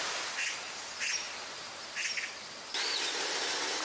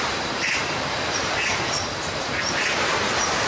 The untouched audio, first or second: first